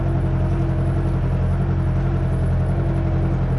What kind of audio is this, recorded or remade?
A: recorded